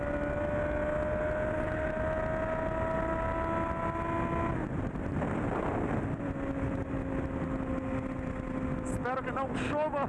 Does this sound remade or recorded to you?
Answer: recorded